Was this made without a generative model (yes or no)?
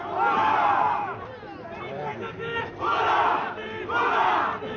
yes